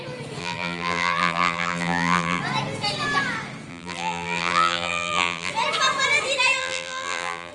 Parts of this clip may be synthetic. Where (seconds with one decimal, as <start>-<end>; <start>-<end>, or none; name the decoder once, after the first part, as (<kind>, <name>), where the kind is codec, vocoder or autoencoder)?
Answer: 0.4-2.4 (vocoder, BigVGAN v2); 3.7-5.5; 6.6-7.5